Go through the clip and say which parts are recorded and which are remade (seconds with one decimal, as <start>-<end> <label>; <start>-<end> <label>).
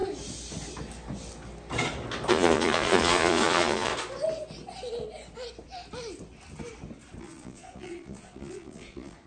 0.0-2.3 recorded; 2.3-3.9 remade; 3.9-7.2 recorded; 7.2-9.3 remade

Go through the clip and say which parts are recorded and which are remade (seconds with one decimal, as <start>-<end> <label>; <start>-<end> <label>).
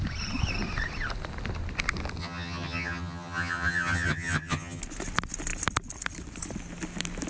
0.0-2.2 recorded; 2.2-4.8 remade; 4.8-7.3 recorded